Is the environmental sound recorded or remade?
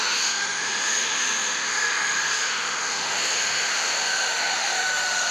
remade